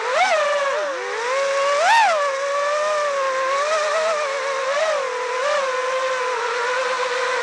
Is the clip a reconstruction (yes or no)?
no